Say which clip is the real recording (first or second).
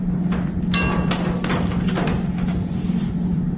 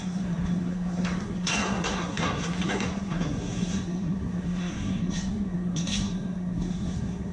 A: first